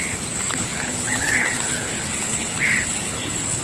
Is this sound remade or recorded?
remade